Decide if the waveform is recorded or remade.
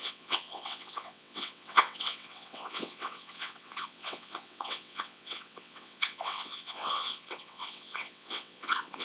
remade